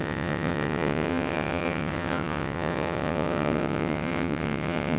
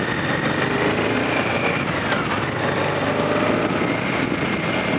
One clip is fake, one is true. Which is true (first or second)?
second